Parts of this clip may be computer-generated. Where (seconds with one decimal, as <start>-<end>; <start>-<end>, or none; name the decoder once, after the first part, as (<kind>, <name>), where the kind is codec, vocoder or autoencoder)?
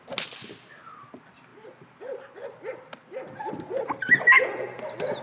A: none